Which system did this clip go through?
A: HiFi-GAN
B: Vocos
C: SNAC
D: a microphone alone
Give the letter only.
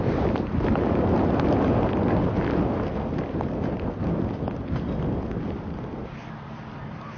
D